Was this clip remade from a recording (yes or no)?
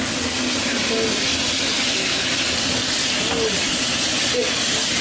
no